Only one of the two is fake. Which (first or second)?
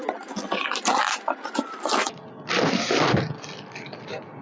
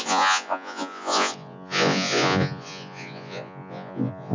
second